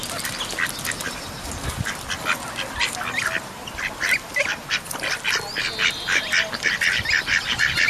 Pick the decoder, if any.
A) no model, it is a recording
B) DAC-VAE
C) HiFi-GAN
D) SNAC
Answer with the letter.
A